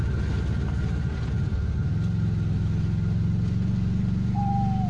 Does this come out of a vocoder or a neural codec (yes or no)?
no